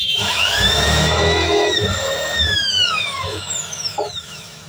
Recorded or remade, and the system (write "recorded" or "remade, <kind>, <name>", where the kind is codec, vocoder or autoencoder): remade, autoencoder, DAC-VAE